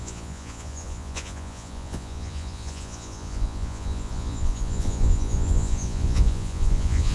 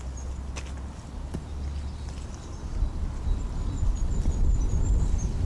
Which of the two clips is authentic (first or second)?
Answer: second